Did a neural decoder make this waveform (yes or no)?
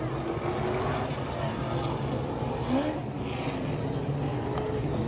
no